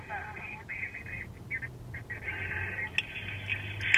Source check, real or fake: real